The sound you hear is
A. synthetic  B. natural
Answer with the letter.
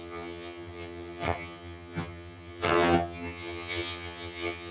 A